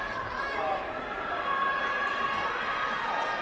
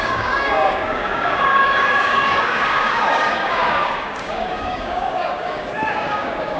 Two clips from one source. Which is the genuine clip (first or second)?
first